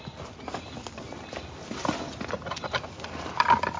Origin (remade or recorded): recorded